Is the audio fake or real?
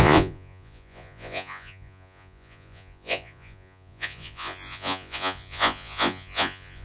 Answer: fake